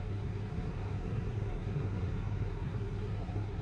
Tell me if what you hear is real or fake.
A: fake